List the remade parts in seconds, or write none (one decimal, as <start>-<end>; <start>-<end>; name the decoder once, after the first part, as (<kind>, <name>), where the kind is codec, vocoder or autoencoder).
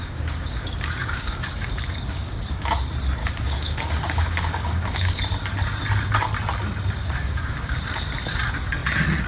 0.0-2.6 (codec, DAC); 3.2-5.2; 7.0-7.8